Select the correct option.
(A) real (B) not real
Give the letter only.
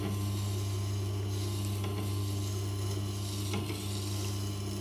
A